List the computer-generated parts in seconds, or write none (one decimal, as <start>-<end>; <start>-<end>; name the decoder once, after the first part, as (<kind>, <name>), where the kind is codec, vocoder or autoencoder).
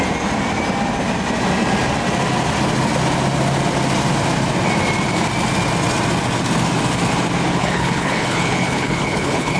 7.6-9.6 (codec, HILCodec)